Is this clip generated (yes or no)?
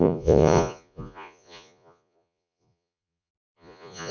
yes